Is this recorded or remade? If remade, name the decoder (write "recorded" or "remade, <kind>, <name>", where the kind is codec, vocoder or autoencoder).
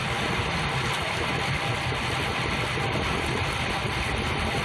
recorded